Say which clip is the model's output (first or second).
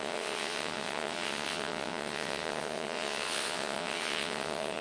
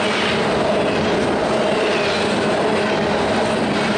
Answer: first